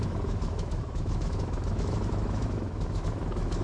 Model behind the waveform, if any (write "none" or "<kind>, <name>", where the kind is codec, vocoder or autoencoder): autoencoder, DAC-VAE